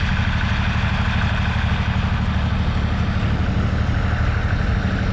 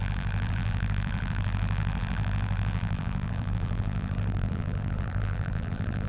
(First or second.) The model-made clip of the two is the second